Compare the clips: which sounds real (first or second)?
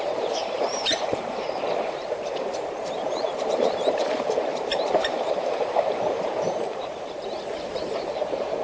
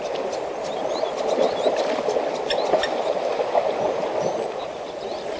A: second